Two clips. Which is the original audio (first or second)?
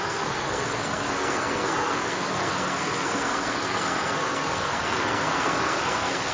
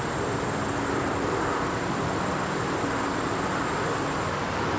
second